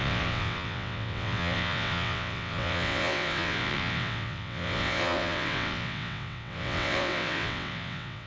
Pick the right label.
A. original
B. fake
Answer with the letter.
B